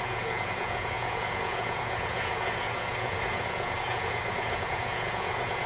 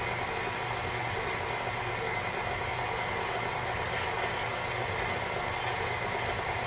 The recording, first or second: second